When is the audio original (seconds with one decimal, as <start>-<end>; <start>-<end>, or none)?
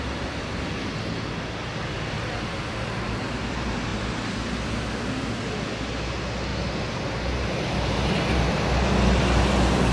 0.0-6.5; 8.5-9.9